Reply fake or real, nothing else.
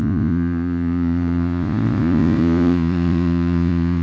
fake